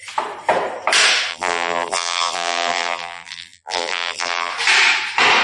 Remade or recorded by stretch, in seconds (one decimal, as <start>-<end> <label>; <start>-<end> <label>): 0.0-1.3 recorded; 1.3-4.5 remade; 4.5-5.4 recorded